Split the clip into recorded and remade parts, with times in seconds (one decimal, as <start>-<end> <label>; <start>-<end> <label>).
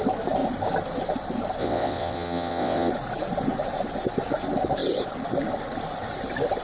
0.0-1.6 recorded; 1.6-2.9 remade; 2.9-6.6 recorded